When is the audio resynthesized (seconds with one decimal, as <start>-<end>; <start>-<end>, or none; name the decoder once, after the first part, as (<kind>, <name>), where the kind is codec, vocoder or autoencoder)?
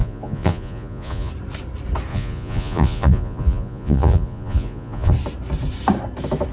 0.0-1.3 (vocoder, Vocos); 2.1-5.1